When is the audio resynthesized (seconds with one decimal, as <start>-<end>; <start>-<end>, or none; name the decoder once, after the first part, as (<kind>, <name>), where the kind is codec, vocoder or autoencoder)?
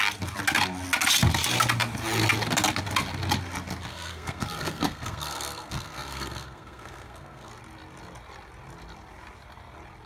3.9-7.5 (codec, SNAC)